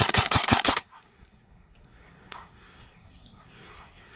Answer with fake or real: fake